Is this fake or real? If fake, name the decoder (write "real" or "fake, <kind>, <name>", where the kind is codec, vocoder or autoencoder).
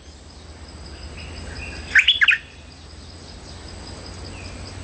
real